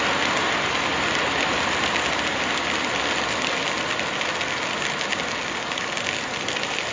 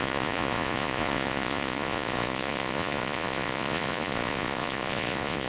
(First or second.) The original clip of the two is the first